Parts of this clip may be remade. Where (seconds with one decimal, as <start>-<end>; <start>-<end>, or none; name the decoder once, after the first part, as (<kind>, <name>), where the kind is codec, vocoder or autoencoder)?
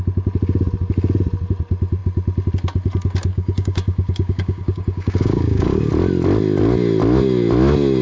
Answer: 3.3-5.9 (codec, DAC)